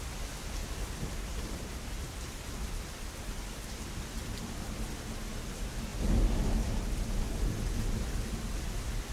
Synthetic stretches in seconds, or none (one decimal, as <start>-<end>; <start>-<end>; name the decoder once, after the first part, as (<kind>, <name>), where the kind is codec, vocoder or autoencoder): 0.6-4.4 (vocoder, BigVGAN v2)